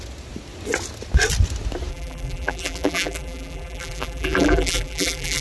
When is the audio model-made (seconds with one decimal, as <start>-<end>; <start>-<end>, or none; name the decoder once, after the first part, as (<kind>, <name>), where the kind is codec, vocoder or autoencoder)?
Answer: 1.9-5.4 (vocoder, BigVGAN v2)